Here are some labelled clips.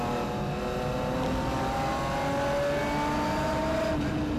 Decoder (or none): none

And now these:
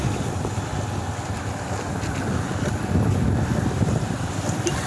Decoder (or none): vocoder, BigVGAN v2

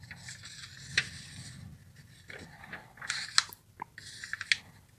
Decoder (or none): none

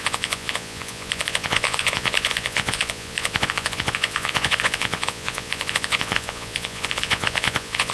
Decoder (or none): vocoder, Vocos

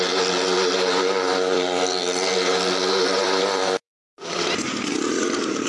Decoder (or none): vocoder, BigVGAN v2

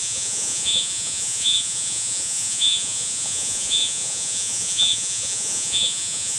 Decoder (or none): vocoder, Vocos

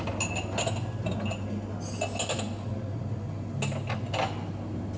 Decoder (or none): none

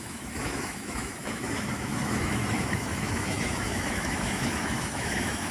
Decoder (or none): autoencoder, DAC-VAE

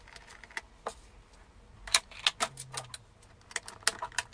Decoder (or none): none